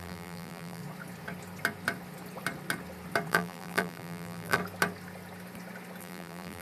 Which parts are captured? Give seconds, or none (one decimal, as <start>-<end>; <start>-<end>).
0.8-3.3; 4.6-6.0